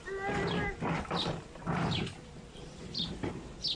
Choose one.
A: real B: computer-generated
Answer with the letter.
A